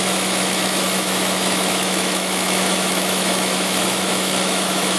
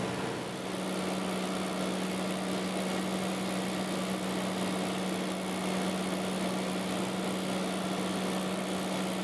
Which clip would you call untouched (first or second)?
second